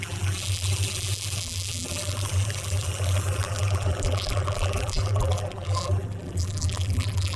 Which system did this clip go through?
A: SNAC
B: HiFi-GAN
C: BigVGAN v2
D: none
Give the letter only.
C